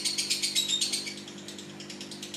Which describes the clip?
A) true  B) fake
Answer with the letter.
A